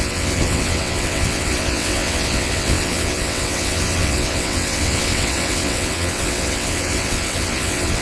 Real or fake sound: fake